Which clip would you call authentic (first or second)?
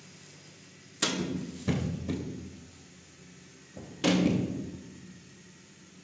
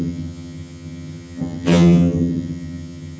first